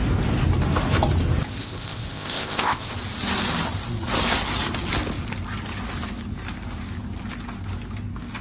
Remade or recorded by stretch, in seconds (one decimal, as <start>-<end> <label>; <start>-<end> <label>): 0.0-1.6 recorded; 1.6-2.9 remade; 2.9-8.4 recorded